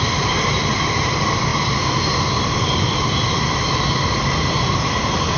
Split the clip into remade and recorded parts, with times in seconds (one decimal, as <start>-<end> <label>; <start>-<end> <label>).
0.0-5.4 recorded